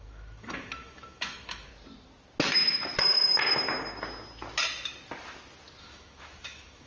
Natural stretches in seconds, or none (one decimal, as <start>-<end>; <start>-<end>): 1.7-5.8